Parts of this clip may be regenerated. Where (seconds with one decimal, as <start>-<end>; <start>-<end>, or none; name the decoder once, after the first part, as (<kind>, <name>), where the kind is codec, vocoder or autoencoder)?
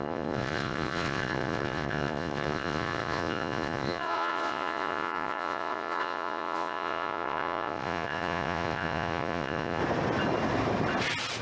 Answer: 0.0-9.8 (vocoder, Vocos)